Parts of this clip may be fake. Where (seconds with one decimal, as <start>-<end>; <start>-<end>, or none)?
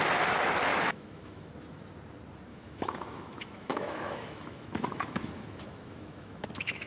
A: 0.7-1.5; 2.5-6.9